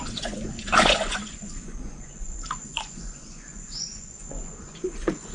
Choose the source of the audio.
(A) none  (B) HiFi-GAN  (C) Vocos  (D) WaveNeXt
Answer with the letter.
C